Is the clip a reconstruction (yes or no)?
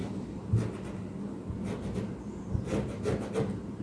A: no